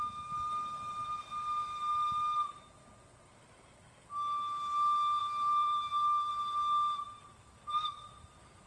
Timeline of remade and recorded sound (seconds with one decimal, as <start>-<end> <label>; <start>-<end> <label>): 0.0-5.2 recorded; 5.2-6.3 remade; 6.3-8.7 recorded